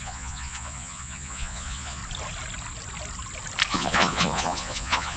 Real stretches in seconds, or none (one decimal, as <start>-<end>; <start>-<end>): 2.0-3.7